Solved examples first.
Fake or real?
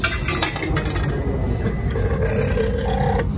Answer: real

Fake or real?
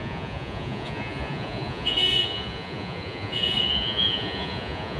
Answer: fake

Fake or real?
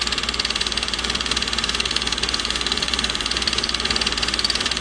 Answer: fake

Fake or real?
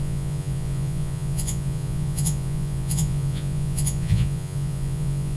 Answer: fake